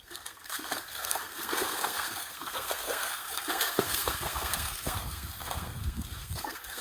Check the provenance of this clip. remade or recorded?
remade